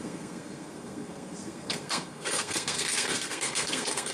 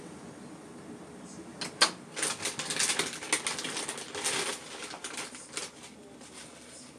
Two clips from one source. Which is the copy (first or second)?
first